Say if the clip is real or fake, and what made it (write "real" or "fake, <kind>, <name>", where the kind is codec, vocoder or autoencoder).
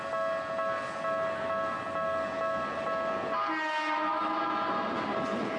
real